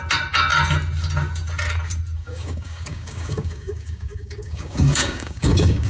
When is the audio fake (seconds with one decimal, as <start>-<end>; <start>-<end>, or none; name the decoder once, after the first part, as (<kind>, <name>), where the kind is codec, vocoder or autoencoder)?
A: 2.2-5.9 (codec, DAC)

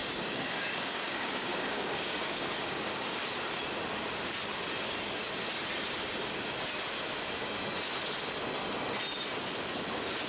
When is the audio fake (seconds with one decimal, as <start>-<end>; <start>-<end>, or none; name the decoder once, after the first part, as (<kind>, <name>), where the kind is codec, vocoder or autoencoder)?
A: 0.0-3.2 (codec, DAC)

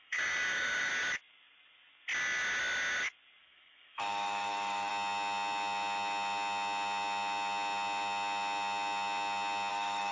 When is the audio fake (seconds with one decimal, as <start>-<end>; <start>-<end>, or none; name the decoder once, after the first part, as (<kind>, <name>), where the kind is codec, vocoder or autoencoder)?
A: 0.0-0.9 (codec, DAC); 3.4-4.9; 9.7-10.1

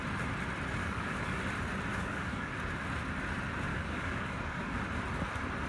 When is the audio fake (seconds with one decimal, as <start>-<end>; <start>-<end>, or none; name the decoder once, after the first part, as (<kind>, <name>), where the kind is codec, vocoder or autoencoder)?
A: 0.8-1.4 (codec, DAC); 1.9-2.5; 3.7-4.8